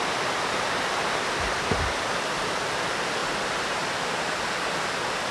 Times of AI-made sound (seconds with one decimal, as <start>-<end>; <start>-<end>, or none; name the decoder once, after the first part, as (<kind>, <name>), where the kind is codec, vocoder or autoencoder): 3.2-4.4 (vocoder, BigVGAN v2)